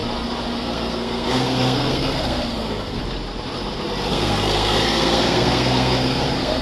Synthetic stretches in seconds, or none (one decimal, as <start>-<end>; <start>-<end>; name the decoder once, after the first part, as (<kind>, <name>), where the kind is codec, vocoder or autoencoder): 0.6-3.0 (codec, SNAC); 4.1-6.6